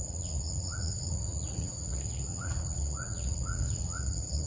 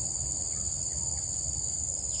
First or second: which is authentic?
second